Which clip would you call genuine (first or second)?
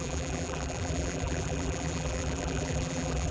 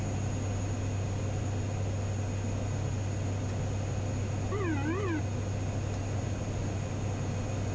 second